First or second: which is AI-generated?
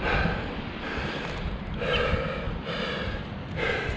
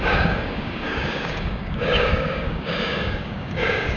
second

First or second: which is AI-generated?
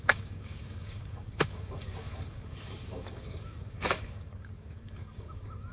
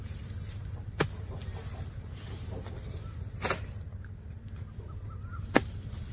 first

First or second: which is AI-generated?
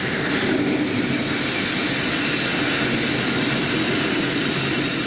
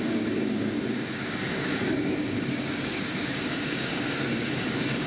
second